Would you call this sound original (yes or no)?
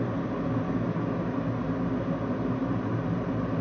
yes